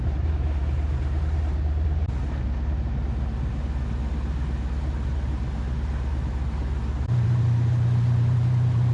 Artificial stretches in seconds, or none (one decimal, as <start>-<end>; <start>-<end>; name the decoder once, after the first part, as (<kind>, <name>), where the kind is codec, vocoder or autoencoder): none